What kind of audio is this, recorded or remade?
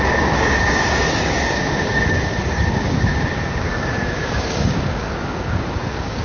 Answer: remade